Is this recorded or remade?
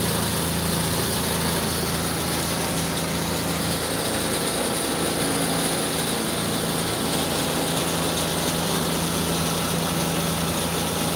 recorded